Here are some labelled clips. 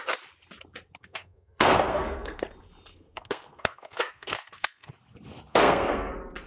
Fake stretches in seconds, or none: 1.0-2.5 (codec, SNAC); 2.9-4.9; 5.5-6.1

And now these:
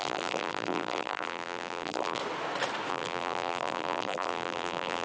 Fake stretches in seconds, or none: 0.0-2.2 (vocoder, BigVGAN v2); 2.9-5.0

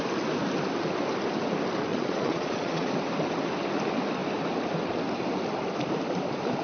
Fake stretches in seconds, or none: 1.9-2.9 (vocoder, Vocos)